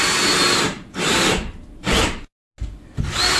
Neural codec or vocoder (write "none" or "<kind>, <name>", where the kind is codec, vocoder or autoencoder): none